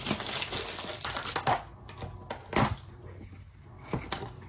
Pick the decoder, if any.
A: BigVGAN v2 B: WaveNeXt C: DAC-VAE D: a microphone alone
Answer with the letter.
D